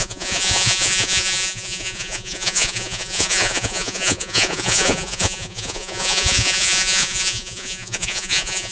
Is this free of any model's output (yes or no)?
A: no